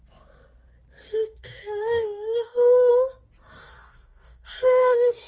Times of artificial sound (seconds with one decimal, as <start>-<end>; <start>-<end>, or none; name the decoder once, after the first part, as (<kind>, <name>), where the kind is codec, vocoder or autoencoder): 1.1-2.9 (codec, DAC); 3.6-5.3